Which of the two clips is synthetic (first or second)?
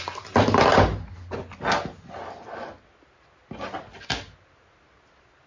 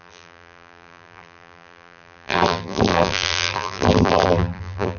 second